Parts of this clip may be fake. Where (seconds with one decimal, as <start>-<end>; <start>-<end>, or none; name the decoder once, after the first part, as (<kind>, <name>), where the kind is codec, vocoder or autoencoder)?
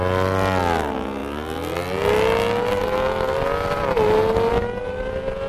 none